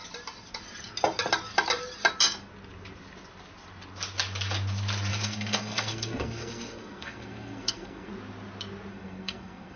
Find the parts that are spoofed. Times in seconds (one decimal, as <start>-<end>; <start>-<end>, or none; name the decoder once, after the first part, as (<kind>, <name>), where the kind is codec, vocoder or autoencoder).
5.1-8.1 (codec, SNAC); 8.9-9.8